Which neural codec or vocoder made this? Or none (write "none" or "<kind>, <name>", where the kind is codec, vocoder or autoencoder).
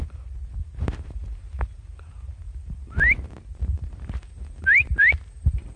vocoder, BigVGAN v2